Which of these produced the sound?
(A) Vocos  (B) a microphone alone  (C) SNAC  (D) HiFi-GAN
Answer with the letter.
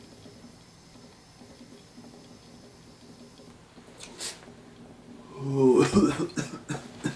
B